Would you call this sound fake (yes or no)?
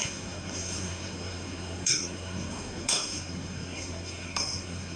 yes